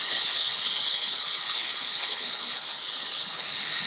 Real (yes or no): no